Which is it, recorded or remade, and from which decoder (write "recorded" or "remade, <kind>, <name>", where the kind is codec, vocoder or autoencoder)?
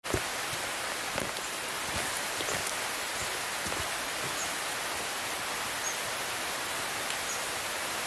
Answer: recorded